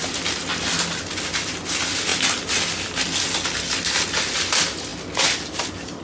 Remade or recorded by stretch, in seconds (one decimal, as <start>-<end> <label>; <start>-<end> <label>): 0.0-6.0 recorded